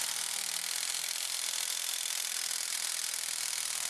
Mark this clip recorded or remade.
remade